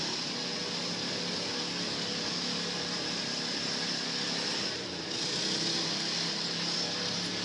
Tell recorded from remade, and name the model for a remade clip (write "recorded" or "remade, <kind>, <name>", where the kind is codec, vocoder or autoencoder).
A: recorded